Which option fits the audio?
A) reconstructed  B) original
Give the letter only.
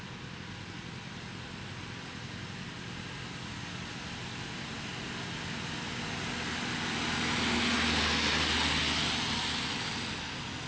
B